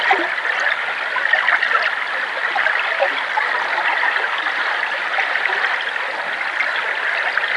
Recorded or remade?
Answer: recorded